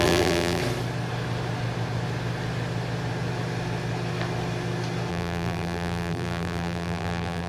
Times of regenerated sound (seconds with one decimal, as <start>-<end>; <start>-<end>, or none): 0.0-0.6; 5.1-7.5